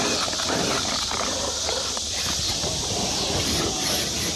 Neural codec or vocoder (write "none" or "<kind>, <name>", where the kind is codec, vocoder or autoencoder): none